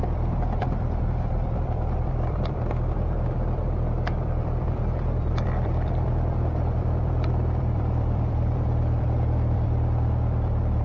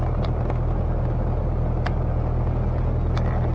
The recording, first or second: second